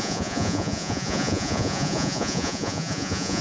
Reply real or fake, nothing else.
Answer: fake